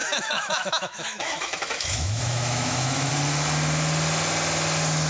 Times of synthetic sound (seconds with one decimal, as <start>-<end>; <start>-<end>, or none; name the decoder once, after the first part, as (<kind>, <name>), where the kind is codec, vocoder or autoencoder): 0.0-3.1 (autoencoder, DAC-VAE)